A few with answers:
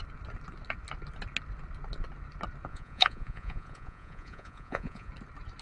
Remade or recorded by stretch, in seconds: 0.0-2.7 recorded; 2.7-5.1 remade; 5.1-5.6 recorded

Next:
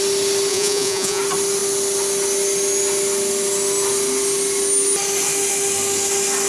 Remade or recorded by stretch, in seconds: 0.0-0.5 recorded; 0.5-1.2 remade; 1.2-6.5 recorded

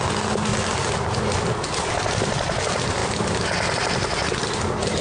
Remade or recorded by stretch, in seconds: 0.0-5.0 recorded